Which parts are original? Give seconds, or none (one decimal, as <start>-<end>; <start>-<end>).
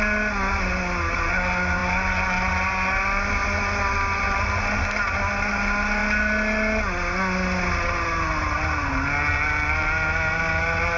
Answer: 0.0-11.0